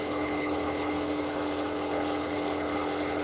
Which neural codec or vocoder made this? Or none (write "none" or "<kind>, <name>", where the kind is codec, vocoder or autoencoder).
codec, HILCodec